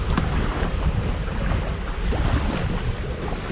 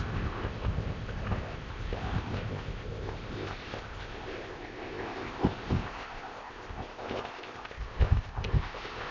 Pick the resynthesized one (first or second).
second